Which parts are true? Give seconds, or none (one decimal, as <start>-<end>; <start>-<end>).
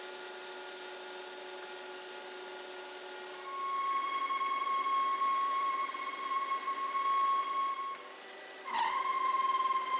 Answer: 0.0-5.3; 6.8-10.0